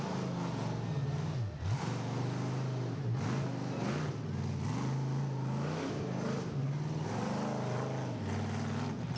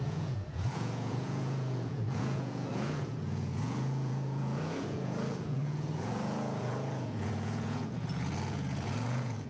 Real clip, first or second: first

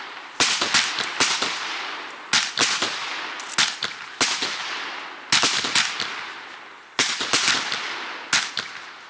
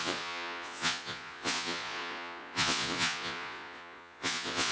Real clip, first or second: first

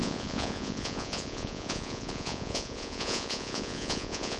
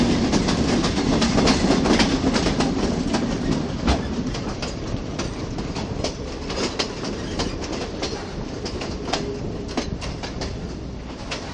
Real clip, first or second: second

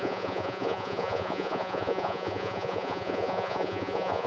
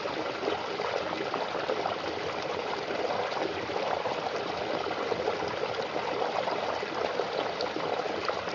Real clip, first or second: second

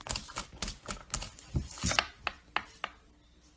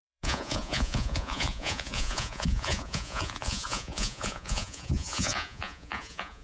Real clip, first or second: first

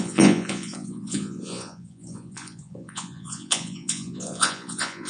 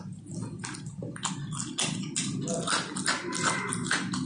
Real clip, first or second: second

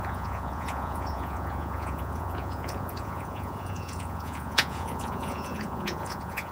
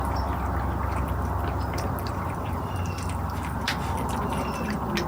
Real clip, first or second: second